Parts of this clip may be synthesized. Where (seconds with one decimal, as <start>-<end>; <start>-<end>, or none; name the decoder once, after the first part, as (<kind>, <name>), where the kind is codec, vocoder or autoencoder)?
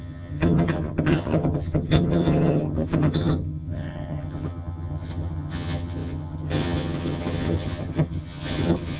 0.0-9.0 (vocoder, HiFi-GAN)